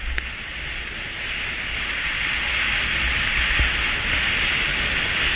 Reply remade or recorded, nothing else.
recorded